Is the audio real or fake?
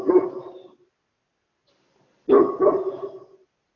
real